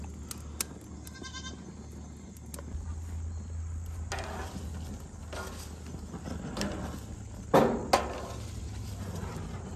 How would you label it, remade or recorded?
recorded